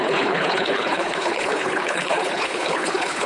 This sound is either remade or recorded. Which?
remade